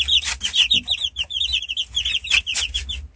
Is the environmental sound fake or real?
real